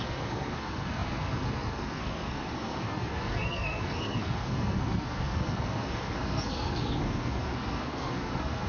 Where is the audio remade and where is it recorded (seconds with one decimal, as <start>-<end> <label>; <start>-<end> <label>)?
0.0-8.7 remade